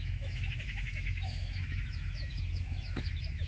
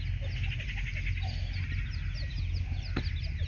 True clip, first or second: second